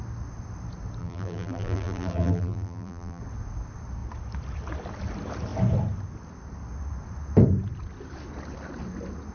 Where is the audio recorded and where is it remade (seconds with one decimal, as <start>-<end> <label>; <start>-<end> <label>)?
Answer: 0.0-1.0 recorded; 1.0-3.2 remade; 3.2-9.3 recorded